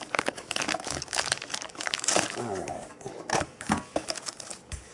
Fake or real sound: fake